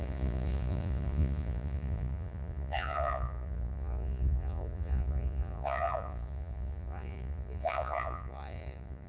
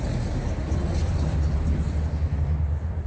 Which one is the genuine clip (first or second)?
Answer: second